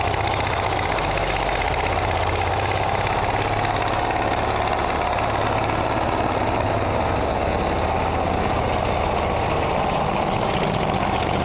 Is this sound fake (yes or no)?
no